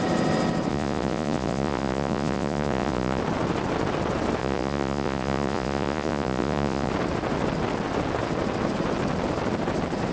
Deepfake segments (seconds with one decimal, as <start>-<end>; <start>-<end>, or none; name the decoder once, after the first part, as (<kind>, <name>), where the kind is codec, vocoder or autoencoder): 0.7-3.2 (vocoder, Vocos); 4.4-6.9